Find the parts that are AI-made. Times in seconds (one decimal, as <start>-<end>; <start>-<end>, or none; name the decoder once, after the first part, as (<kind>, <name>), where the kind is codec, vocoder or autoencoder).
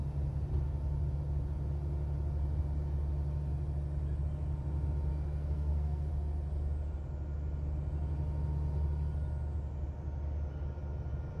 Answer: 5.1-6.1 (codec, SNAC)